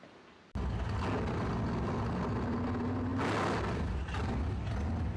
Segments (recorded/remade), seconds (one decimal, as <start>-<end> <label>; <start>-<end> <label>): 0.0-5.2 recorded